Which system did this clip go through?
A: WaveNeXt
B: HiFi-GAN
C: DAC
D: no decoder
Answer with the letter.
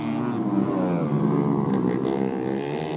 D